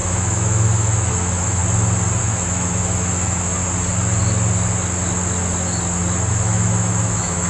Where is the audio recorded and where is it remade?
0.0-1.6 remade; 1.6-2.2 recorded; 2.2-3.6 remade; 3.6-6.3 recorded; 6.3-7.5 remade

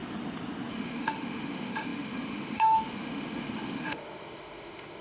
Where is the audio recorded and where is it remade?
0.0-0.7 recorded; 0.7-5.0 remade

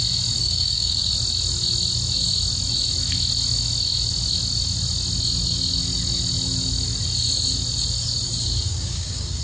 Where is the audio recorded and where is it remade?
0.0-0.4 recorded; 0.4-1.1 remade; 1.1-8.7 recorded; 8.7-9.4 remade

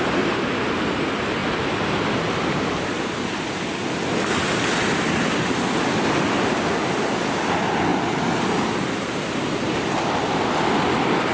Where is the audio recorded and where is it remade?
0.0-11.3 recorded

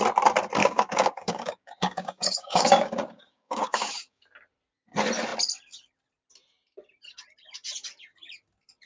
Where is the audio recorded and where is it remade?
0.0-0.6 recorded; 0.6-4.2 remade; 4.2-8.9 recorded